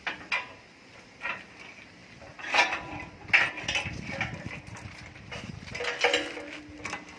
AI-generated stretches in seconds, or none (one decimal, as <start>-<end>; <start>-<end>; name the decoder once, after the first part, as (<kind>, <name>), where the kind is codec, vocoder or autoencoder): none